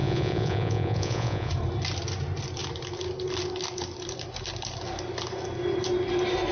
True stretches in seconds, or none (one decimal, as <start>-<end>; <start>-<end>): 1.5-6.5